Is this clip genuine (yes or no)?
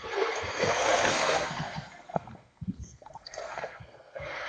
no